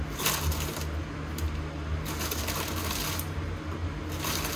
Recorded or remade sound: recorded